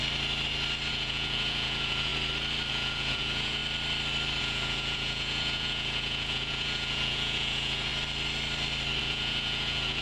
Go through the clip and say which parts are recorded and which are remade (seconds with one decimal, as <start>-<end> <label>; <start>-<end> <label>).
0.0-0.9 recorded; 0.9-2.1 remade; 2.1-2.7 recorded; 2.7-3.6 remade; 3.6-4.4 recorded; 4.4-7.9 remade; 7.9-9.0 recorded; 9.0-10.0 remade